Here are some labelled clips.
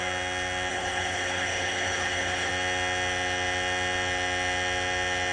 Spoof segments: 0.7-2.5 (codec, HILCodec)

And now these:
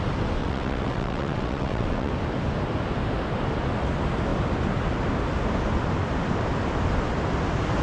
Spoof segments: 0.4-2.1 (vocoder, WaveNeXt)

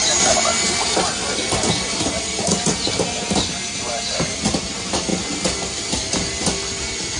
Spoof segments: none

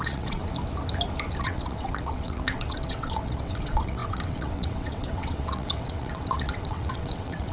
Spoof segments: 0.0-0.4 (vocoder, WaveNeXt); 1.4-7.5